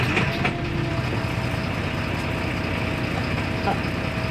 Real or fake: real